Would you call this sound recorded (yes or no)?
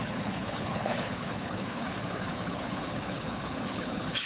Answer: no